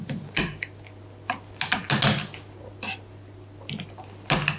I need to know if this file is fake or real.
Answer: real